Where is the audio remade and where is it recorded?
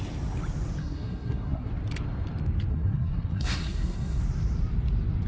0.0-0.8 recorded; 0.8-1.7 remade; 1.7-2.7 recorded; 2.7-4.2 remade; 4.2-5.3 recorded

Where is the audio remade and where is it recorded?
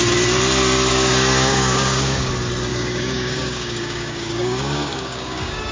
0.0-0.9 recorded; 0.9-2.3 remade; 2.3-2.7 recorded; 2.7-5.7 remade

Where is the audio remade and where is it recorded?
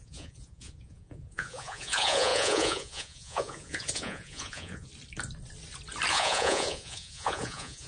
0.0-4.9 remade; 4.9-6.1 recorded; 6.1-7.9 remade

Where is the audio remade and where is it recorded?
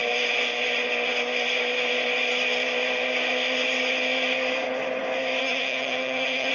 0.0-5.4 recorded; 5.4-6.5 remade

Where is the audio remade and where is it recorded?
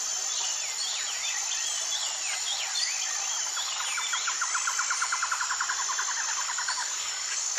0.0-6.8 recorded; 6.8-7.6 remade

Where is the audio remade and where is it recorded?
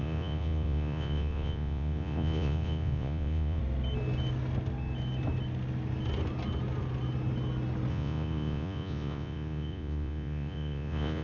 0.0-3.6 remade; 3.6-7.9 recorded; 7.9-11.2 remade